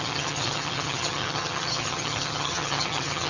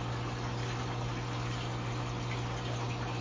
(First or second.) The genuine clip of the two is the second